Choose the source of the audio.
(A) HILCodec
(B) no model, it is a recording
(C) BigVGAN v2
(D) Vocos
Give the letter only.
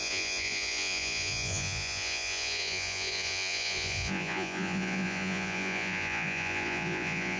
D